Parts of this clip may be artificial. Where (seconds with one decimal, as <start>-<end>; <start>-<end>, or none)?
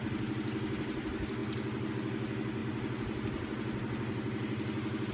none